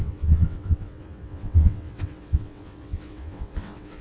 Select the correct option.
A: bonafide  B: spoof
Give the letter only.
B